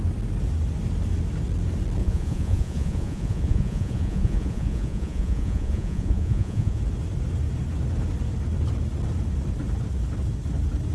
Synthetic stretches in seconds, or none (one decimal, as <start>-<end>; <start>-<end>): 2.0-6.8